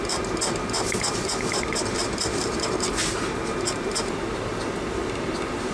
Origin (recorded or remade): recorded